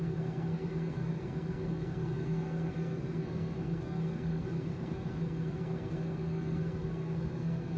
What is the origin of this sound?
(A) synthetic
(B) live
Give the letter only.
A